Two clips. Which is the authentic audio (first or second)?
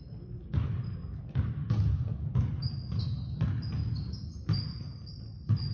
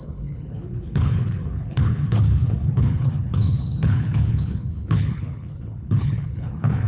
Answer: first